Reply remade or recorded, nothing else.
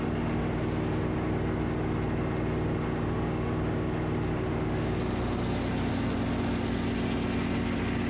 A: recorded